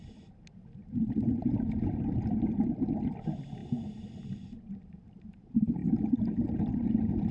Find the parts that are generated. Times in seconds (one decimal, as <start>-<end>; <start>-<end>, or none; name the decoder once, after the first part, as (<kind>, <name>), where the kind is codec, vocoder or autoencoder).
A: none